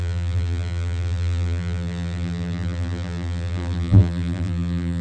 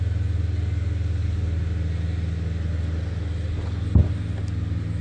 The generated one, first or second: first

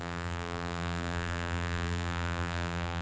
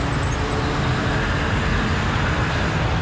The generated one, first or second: first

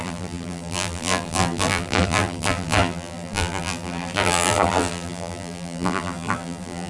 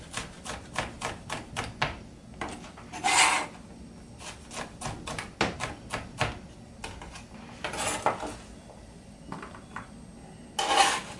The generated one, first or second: first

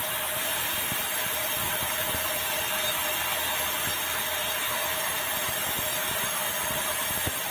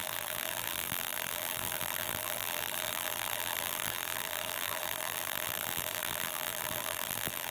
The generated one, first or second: second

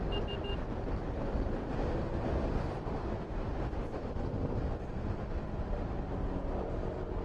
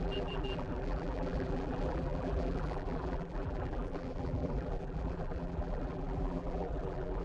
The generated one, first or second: second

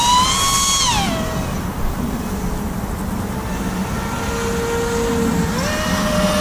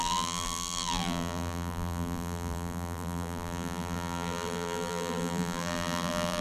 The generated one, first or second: second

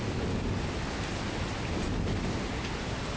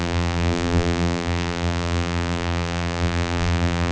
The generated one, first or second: second